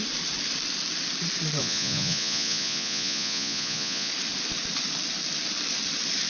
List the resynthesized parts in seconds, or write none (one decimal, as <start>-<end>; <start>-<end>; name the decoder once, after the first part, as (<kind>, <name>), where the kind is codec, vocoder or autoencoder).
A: 1.6-4.1 (vocoder, Vocos)